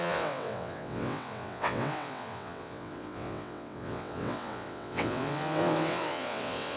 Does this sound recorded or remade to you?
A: remade